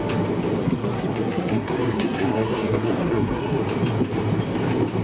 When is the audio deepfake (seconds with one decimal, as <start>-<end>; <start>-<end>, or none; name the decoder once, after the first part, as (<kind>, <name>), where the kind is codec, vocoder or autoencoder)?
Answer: 0.6-3.6 (codec, SNAC)